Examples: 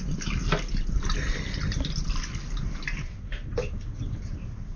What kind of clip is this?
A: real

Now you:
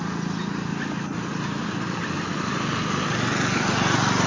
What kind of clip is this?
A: real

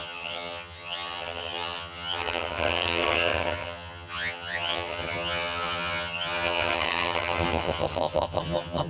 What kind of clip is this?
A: fake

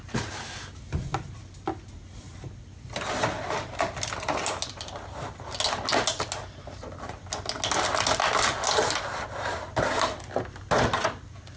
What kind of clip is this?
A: real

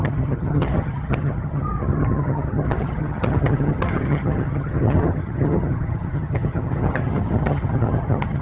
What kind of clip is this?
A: fake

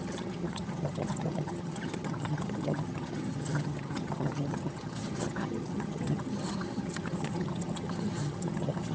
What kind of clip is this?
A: fake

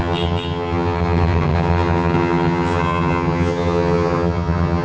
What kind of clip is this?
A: fake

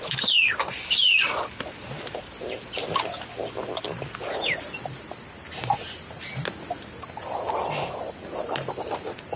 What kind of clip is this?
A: real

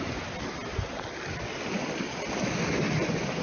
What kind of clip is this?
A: real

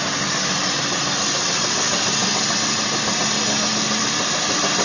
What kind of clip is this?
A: real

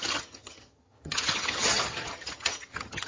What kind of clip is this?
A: fake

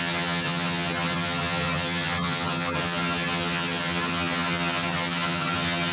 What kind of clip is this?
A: fake